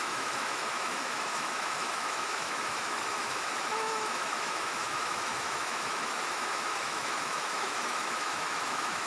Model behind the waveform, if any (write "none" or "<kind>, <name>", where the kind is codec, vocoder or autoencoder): autoencoder, DAC-VAE